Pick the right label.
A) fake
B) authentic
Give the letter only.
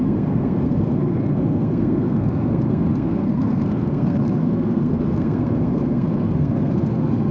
A